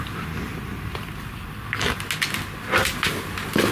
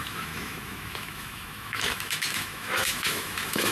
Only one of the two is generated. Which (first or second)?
second